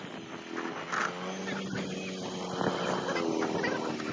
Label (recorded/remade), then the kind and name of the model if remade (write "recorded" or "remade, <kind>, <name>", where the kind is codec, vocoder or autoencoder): recorded